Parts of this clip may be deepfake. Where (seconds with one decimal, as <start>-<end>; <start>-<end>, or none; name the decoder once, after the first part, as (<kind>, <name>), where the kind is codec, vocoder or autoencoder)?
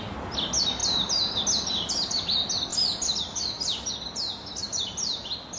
2.7-3.9 (vocoder, BigVGAN v2)